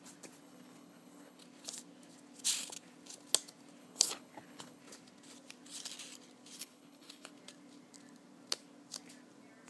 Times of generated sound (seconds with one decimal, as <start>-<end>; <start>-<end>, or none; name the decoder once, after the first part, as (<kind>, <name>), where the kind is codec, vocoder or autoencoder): 0.4-1.4 (codec, HILCodec); 3.8-4.8; 6.6-7.3